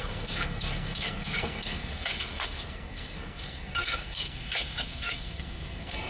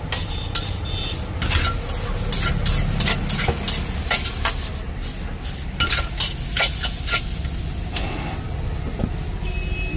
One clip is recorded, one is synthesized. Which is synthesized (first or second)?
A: first